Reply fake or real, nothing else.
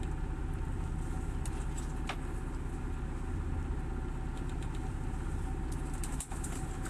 real